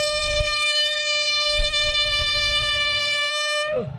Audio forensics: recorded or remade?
remade